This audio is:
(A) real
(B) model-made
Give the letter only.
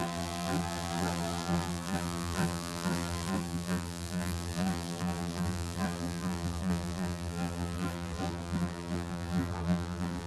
B